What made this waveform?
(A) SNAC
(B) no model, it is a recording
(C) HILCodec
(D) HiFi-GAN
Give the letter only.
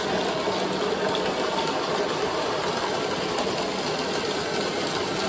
B